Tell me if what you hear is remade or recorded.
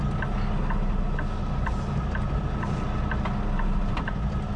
recorded